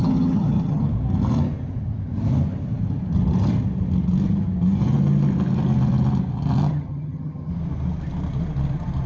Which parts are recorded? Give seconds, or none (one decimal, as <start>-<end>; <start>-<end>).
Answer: 0.8-6.7; 7.5-9.1